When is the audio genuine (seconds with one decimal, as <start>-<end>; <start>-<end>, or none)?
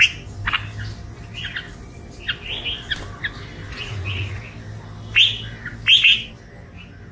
0.0-3.7; 4.4-7.1